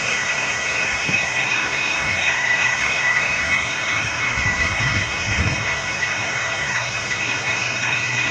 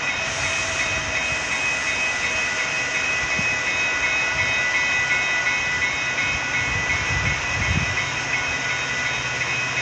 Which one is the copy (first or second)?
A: first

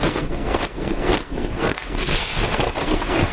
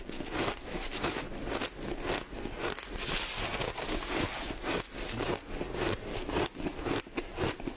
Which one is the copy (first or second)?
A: first